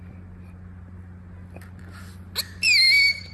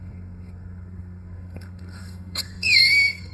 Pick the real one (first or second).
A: first